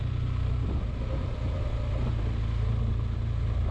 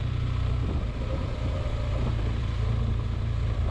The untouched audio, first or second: first